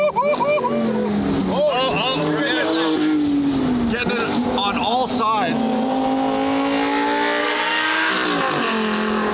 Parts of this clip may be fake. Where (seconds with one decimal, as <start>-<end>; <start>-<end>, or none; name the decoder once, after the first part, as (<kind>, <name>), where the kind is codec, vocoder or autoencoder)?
7.4-8.1 (codec, SNAC)